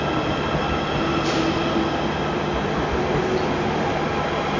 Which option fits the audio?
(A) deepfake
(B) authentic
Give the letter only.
B